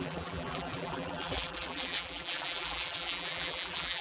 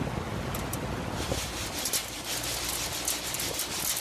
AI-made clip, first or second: first